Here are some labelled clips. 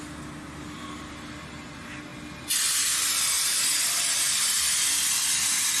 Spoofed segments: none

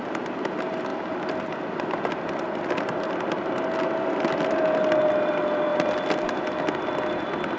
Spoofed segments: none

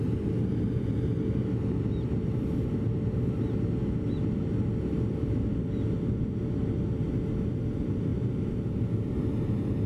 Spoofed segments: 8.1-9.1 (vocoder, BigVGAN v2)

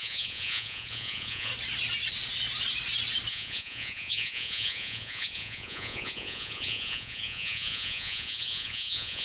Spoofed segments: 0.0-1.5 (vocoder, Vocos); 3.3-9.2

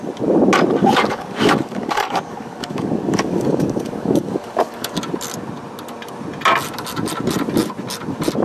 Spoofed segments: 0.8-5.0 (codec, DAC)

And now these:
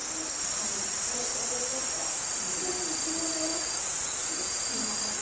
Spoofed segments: 3.5-4.7 (vocoder, Vocos)